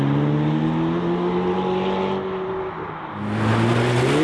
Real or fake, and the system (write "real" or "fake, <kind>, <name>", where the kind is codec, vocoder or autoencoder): real